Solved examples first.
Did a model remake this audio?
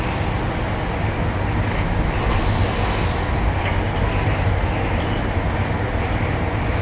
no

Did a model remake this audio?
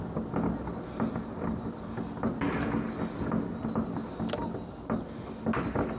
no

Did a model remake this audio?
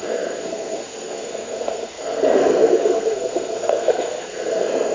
yes